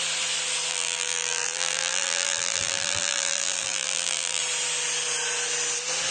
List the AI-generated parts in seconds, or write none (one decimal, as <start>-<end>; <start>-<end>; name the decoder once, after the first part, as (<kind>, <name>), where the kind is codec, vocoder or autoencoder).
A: 0.7-4.4 (vocoder, BigVGAN v2)